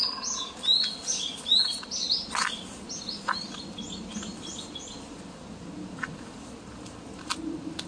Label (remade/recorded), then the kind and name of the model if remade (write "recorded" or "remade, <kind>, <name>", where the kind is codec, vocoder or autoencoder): recorded